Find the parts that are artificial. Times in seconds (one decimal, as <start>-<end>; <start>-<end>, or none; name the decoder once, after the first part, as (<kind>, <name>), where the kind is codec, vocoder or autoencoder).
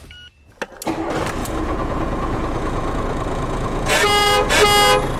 1.4-4.5 (vocoder, Vocos)